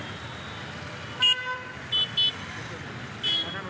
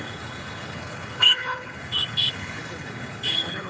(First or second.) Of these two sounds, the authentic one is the first